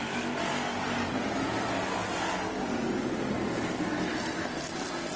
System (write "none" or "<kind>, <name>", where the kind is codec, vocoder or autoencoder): none